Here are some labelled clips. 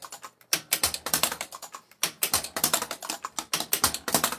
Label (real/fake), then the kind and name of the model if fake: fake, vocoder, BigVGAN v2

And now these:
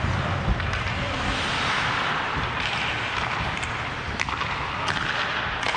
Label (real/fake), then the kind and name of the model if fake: real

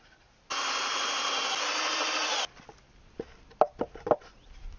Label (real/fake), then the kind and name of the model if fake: real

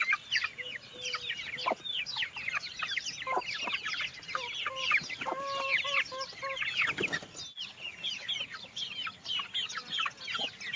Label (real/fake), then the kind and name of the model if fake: real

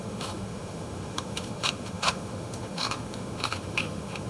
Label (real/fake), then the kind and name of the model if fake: fake, autoencoder, DAC-VAE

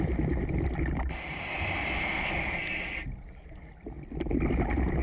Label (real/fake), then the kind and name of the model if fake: real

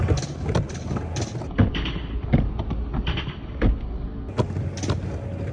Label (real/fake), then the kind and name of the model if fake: real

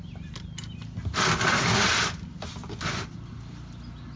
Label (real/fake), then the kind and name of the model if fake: real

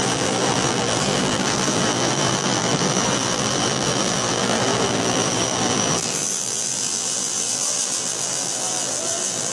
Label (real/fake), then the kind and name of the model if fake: fake, vocoder, BigVGAN v2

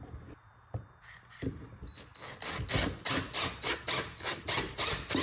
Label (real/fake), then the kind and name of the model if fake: real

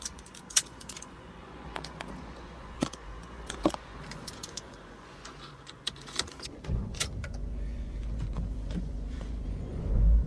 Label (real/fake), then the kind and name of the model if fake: fake, vocoder, Vocos